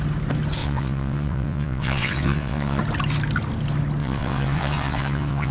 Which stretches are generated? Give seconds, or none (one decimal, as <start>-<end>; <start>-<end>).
0.6-2.8; 4.0-5.5